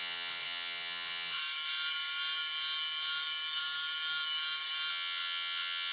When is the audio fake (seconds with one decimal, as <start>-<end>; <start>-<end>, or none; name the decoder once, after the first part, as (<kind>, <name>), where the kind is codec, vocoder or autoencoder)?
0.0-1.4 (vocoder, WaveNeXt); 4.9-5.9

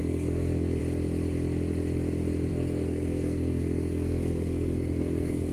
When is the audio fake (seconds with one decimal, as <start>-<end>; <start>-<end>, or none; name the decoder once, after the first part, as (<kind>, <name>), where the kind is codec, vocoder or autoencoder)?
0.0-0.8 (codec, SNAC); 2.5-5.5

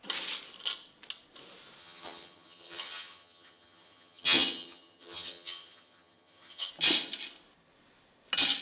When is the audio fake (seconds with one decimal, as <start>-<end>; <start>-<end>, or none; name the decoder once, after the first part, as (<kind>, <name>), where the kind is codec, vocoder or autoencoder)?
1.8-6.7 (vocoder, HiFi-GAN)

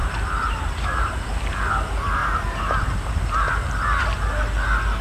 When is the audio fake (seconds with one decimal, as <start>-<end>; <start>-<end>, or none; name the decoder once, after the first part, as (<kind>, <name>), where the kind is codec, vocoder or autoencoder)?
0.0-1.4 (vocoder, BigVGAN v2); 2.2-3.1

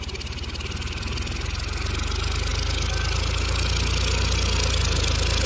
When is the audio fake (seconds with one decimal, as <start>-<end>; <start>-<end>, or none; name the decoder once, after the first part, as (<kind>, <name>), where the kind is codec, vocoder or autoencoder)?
none

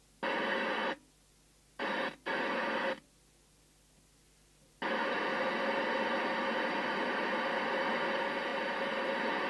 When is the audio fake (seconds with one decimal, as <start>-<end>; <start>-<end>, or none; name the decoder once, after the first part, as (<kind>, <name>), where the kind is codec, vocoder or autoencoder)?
8.5-9.1 (vocoder, BigVGAN v2)

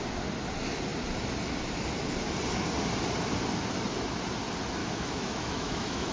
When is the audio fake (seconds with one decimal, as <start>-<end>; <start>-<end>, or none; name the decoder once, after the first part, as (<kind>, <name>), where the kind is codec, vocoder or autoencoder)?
4.8-6.1 (autoencoder, DAC-VAE)